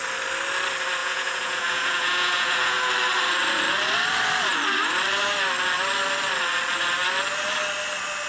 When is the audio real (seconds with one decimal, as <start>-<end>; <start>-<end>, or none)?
0.0-1.0; 2.9-8.3